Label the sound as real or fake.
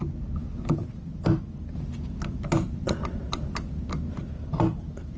real